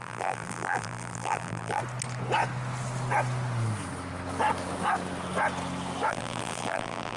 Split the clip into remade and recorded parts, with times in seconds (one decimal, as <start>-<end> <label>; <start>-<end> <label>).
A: 0.0-1.8 remade; 1.8-6.1 recorded; 6.1-7.2 remade